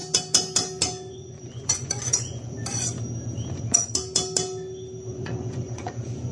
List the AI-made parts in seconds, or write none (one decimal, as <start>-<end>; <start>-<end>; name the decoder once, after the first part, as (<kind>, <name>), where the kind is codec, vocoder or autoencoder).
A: 1.1-2.6 (vocoder, Vocos); 3.5-3.9; 5.1-6.3

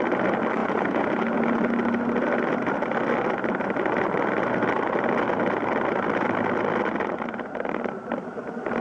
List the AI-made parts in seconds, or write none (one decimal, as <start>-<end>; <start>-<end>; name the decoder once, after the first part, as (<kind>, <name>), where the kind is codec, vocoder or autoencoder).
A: 0.6-1.1 (vocoder, Vocos)

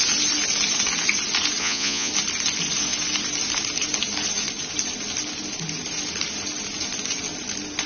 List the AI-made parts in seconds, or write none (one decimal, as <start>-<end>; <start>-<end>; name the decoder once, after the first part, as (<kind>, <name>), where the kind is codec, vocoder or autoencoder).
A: 1.6-2.1 (vocoder, Vocos)

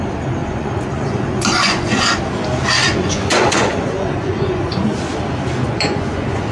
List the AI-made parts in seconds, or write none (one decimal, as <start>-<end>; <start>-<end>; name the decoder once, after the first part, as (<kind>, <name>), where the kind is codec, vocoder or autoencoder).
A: 0.4-2.2 (vocoder, Vocos); 2.8-4.7; 5.6-6.5

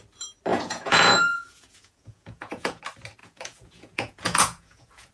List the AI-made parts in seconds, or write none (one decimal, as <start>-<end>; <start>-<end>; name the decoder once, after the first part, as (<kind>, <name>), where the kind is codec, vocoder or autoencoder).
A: 0.5-2.8 (vocoder, Vocos); 3.2-5.1

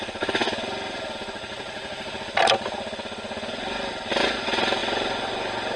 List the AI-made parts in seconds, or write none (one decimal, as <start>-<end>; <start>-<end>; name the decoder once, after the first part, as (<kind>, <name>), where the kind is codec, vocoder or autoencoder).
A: none